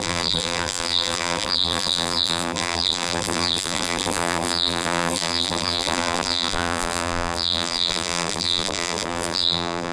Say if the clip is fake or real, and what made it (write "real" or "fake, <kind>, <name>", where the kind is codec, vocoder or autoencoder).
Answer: fake, vocoder, BigVGAN v2